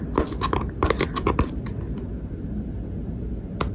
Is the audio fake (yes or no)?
no